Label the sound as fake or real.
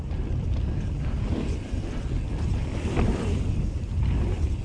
real